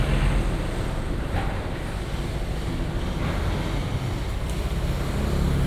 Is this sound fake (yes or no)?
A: no